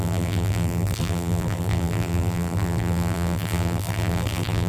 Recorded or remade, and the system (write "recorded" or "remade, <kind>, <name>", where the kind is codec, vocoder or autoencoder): remade, vocoder, BigVGAN v2